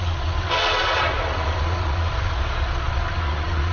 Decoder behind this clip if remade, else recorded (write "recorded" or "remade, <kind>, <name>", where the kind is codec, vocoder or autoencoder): remade, vocoder, Vocos